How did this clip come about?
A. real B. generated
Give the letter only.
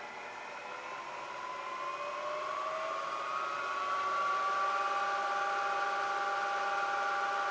A